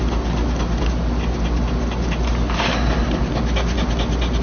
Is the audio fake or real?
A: real